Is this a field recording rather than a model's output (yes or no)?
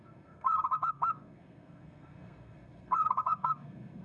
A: no